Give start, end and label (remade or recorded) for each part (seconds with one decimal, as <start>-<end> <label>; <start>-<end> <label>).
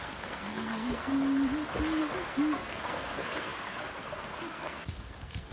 0.0-1.1 remade; 1.1-2.0 recorded; 2.0-5.5 remade